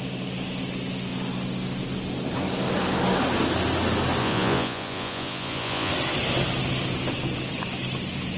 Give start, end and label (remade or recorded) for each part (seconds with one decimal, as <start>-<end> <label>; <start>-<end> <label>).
0.0-4.2 recorded; 4.2-5.9 remade; 5.9-8.4 recorded

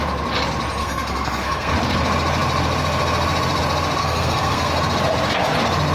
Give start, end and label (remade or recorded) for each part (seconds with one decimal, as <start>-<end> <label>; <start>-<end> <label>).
0.0-0.8 recorded; 0.8-1.7 remade; 1.7-4.0 recorded; 4.0-4.7 remade; 4.7-5.9 recorded